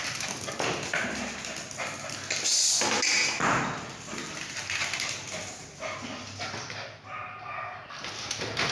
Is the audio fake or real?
real